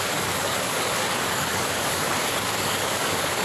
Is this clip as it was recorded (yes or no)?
no